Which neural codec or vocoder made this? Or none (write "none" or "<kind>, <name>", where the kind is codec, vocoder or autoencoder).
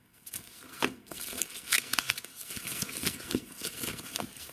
codec, SNAC